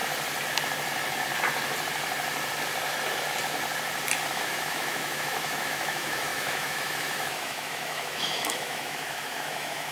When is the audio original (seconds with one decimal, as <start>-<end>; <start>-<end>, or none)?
0.0-4.3